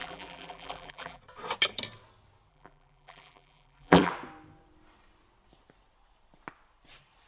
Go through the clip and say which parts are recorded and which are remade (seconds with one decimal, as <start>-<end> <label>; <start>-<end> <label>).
0.0-1.2 remade; 1.2-2.5 recorded; 2.5-4.1 remade; 4.1-7.3 recorded